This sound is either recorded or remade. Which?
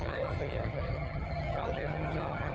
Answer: remade